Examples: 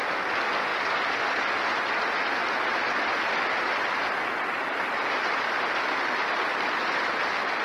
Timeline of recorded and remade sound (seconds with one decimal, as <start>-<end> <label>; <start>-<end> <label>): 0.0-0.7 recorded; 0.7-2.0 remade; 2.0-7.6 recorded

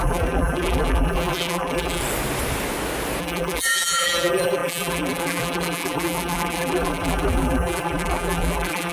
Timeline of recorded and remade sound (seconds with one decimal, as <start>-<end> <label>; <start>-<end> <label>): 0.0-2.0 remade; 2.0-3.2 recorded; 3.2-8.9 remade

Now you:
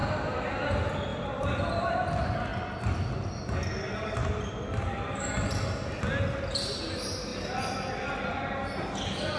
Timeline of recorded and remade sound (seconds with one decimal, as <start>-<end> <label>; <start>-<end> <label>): 0.0-9.4 recorded

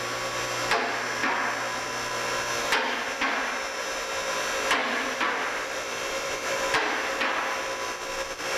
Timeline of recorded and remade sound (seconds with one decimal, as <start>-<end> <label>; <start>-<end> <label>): 0.0-4.8 recorded; 4.8-7.1 remade; 7.1-8.6 recorded

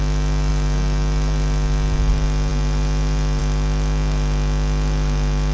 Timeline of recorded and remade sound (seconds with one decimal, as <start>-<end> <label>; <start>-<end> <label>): 0.0-5.5 recorded